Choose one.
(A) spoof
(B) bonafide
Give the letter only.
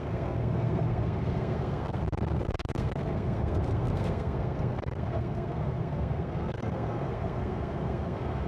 A